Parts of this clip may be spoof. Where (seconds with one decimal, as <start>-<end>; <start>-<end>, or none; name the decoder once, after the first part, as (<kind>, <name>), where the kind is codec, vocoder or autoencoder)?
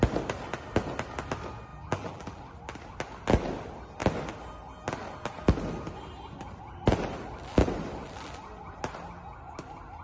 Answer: 1.7-2.4 (vocoder, BigVGAN v2)